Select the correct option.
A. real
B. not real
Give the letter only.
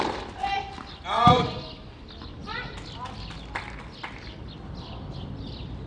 A